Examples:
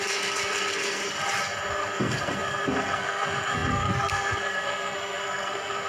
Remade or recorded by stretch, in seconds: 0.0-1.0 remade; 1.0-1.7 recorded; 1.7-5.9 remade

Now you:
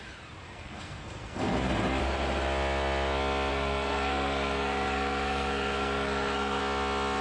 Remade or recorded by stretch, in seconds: 0.0-0.4 recorded; 0.4-2.0 remade; 2.0-3.5 recorded; 3.5-6.6 remade; 6.6-7.2 recorded